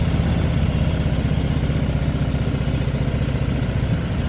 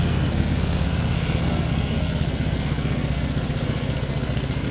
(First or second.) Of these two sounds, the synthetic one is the second